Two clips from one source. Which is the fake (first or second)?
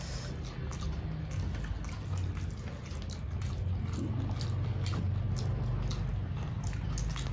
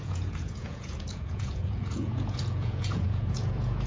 second